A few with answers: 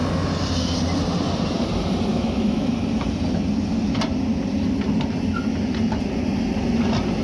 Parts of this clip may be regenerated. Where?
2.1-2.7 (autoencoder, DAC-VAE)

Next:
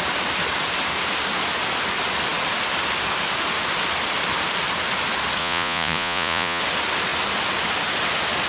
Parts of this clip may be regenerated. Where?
5.4-6.6 (vocoder, Vocos)

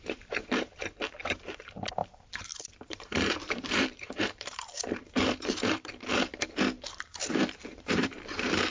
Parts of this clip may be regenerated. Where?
0.0-6.3 (vocoder, BigVGAN v2); 7.1-8.7

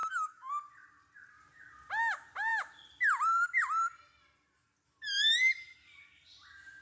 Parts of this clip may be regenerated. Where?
0.0-0.5 (autoencoder, DAC-VAE)

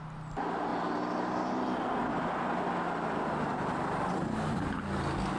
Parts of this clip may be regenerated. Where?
none

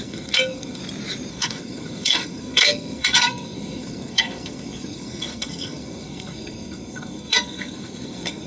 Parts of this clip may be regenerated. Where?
0.0-0.8 (codec, SNAC); 1.3-8.5

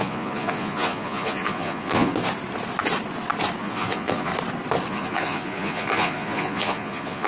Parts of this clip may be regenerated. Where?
0.0-2.1 (vocoder, Vocos); 3.6-4.3; 4.9-7.3

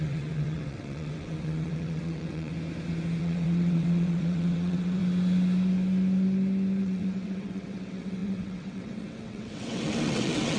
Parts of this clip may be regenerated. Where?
0.0-2.5 (vocoder, WaveNeXt); 3.2-5.0; 6.8-10.6